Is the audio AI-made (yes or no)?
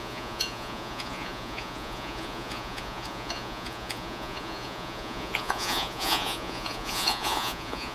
yes